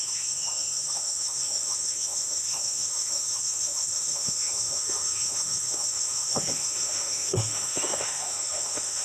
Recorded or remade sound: remade